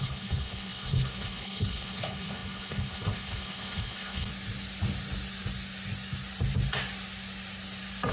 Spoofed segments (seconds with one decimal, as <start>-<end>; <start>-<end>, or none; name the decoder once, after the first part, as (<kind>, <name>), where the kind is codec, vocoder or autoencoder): 0.0-4.3 (codec, HILCodec)